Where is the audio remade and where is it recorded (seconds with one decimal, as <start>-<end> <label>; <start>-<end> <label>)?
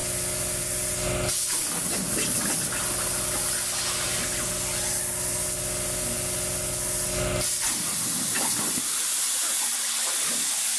0.0-10.8 recorded